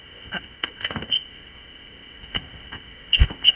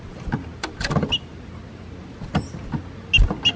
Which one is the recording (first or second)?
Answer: second